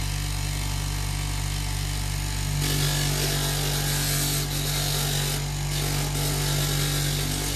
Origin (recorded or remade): recorded